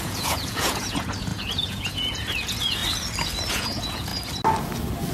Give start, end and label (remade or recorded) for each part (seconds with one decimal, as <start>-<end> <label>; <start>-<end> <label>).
0.0-2.8 remade; 2.8-3.5 recorded; 3.5-4.1 remade; 4.1-5.1 recorded